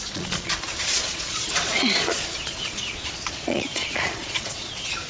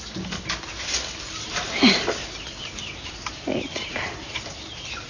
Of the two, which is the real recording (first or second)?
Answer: second